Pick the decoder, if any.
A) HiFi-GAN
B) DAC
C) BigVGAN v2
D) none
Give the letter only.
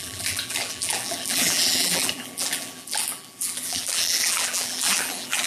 C